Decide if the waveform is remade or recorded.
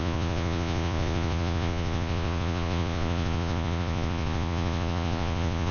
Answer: remade